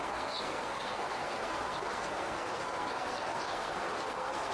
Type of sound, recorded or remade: remade